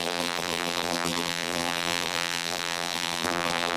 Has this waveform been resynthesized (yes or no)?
yes